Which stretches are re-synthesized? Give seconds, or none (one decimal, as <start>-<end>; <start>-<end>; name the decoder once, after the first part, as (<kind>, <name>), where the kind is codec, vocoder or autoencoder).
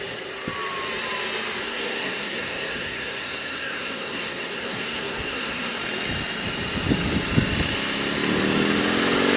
1.6-5.8 (codec, SNAC)